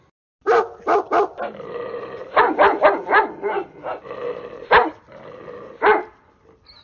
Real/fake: real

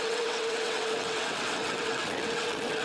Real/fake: fake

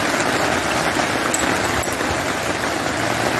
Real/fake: real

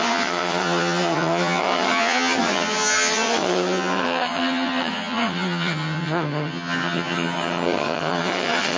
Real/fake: fake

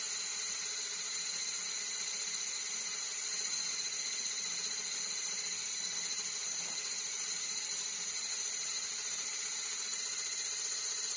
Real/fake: real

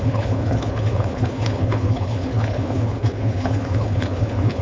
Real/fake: fake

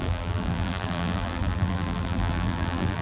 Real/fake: fake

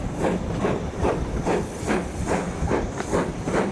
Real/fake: real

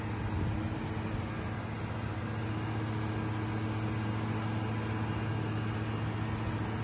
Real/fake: real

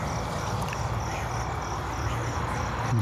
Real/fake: real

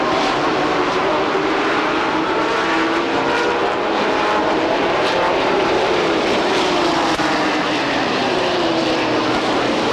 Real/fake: fake